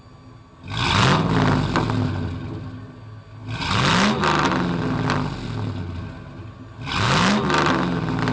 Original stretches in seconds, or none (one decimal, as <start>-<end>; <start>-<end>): 0.0-8.3